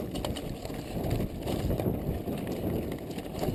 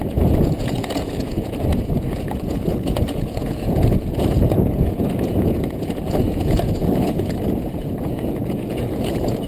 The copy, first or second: second